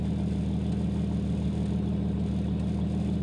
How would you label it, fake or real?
real